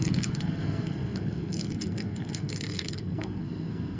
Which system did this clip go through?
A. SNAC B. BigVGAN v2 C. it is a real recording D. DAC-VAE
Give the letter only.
A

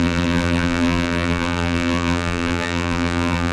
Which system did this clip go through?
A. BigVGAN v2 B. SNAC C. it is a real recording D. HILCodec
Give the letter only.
A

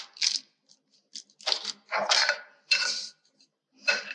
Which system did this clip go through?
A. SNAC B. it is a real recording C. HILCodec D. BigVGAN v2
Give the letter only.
B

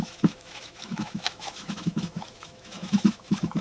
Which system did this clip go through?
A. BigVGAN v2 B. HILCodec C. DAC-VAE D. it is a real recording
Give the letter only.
C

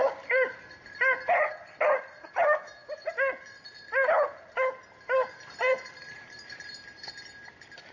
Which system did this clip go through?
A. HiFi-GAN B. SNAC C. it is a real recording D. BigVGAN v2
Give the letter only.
C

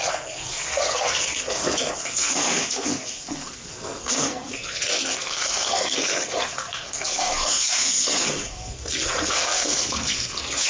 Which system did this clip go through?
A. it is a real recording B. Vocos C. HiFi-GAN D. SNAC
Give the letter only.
D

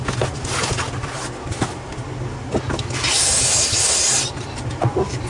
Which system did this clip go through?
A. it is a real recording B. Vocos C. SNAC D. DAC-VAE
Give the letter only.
A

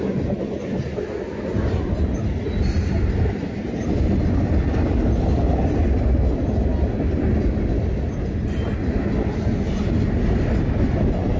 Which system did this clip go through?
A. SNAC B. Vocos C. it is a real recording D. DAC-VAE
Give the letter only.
C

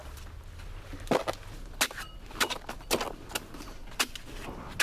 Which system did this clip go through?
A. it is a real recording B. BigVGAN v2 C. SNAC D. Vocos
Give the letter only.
A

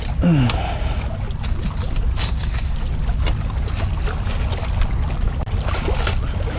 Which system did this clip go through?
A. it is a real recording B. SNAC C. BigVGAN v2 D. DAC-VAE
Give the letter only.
A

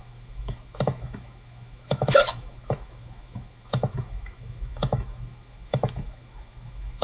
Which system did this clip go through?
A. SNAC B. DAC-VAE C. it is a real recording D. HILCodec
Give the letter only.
B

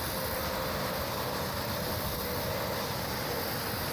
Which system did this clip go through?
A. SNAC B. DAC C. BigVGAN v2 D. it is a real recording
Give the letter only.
D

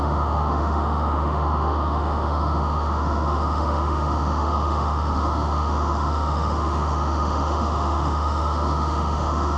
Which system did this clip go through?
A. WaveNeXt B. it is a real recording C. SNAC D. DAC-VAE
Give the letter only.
D